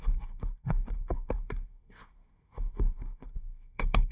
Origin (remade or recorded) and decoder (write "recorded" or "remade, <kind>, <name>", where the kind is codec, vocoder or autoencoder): remade, codec, SNAC